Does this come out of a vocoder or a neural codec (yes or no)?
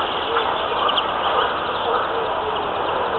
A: no